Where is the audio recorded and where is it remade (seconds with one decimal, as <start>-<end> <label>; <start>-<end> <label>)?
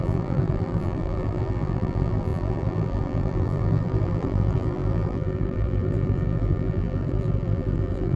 0.0-8.2 remade